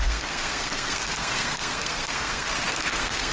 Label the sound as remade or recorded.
remade